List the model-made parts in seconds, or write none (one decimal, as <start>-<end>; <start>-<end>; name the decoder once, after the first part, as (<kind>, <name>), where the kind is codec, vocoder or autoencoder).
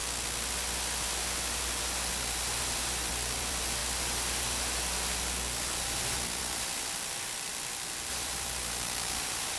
2.6-3.8 (vocoder, BigVGAN v2); 6.4-7.5; 8.1-9.6